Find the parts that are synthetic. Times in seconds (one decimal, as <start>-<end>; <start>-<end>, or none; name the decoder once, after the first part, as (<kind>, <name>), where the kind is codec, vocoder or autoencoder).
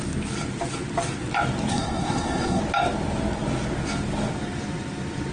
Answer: 1.7-2.6 (codec, SNAC)